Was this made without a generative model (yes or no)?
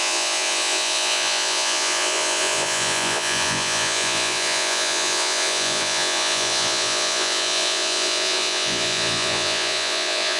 no